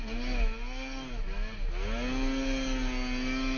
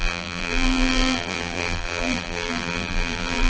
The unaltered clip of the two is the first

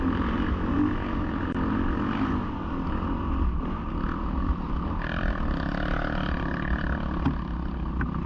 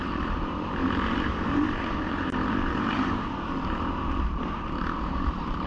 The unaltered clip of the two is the first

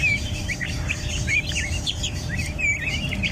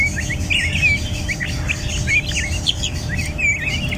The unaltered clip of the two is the second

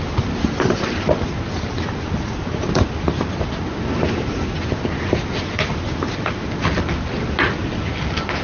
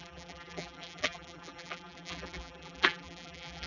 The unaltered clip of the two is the first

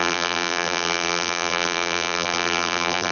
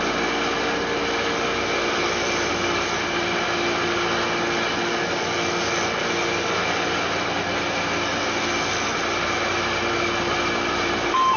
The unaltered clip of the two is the second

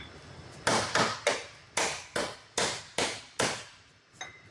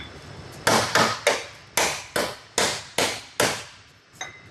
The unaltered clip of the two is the second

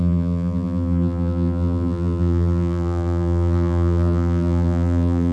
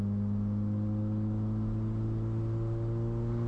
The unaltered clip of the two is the second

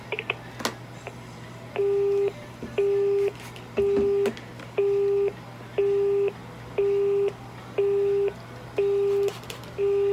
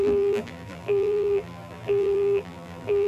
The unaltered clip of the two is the first